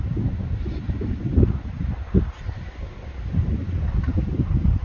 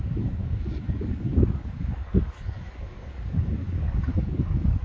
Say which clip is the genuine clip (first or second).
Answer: first